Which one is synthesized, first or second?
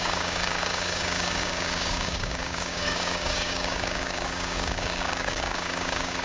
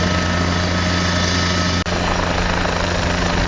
first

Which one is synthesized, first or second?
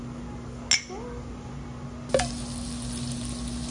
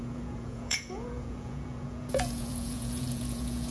second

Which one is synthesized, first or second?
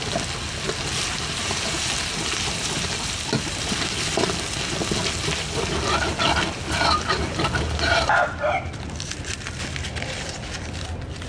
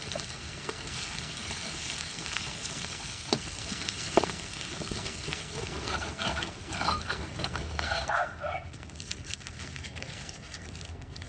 second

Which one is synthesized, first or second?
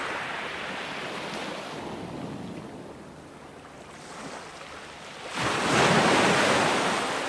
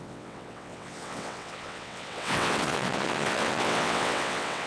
second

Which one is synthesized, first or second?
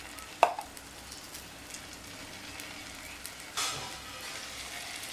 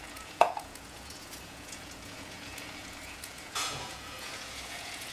second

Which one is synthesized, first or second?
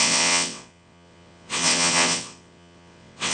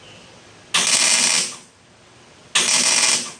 first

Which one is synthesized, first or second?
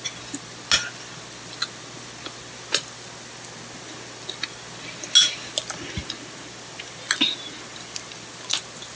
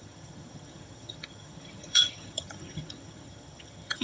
second